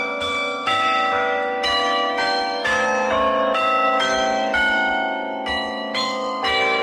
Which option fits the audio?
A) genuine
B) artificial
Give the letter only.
B